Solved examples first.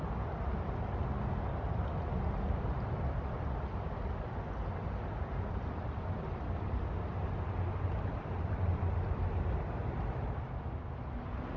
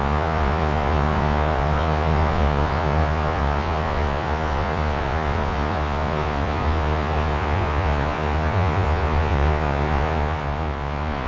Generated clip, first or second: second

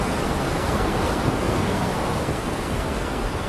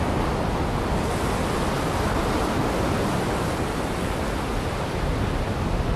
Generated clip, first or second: first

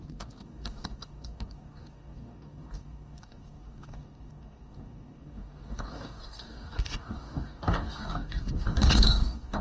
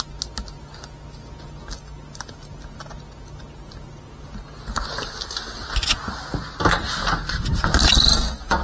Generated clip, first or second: first